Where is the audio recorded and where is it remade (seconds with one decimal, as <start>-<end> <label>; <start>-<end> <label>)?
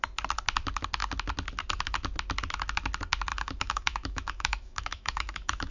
0.0-3.3 recorded; 3.3-5.7 remade